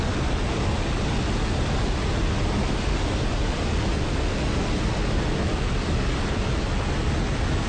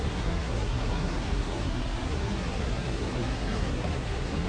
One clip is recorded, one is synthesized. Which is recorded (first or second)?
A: first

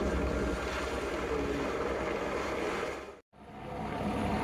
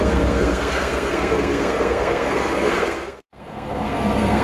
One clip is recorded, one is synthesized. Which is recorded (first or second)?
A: first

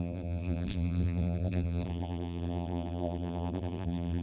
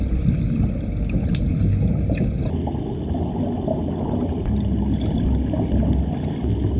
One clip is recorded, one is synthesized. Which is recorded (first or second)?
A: second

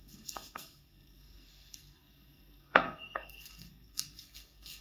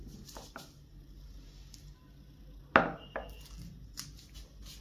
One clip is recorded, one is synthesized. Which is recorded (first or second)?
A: second